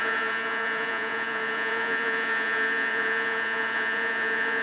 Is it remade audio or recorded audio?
remade